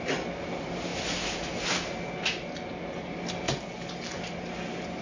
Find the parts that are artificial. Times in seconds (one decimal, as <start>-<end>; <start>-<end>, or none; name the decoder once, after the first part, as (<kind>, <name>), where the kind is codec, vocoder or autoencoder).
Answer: none

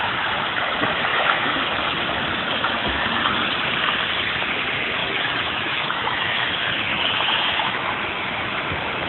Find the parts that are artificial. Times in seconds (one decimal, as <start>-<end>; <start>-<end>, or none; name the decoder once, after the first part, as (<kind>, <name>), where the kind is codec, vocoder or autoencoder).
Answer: 1.1-1.6 (autoencoder, DAC-VAE); 5.0-6.5; 6.9-7.9

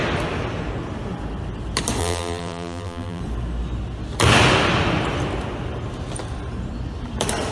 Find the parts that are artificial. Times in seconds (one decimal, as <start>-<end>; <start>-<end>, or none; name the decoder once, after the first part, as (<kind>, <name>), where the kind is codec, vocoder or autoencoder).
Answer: 2.0-3.2 (vocoder, BigVGAN v2)

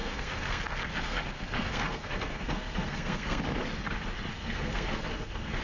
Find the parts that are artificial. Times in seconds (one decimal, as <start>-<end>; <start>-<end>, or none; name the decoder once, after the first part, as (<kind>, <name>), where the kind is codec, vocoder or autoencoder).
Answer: 0.0-3.4 (codec, SNAC); 4.3-5.6

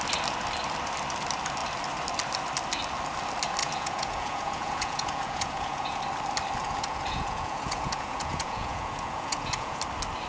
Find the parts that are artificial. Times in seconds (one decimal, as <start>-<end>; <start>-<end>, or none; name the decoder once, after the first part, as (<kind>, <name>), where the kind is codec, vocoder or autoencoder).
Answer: 3.6-6.0 (vocoder, Vocos); 6.6-9.8

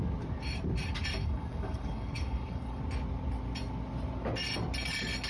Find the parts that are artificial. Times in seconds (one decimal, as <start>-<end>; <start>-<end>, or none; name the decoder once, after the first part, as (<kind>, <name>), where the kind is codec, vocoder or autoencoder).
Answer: 1.2-2.8 (codec, DAC)

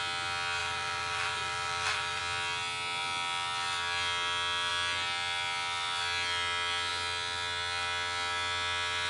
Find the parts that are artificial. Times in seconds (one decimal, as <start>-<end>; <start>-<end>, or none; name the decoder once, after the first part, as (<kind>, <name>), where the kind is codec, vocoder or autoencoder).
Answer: 0.6-2.2 (vocoder, BigVGAN v2)